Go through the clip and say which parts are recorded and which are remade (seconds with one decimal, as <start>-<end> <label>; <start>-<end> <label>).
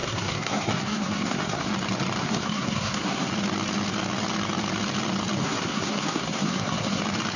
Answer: 0.0-1.7 remade; 1.7-2.2 recorded; 2.2-3.3 remade; 3.3-5.4 recorded; 5.4-7.0 remade; 7.0-7.4 recorded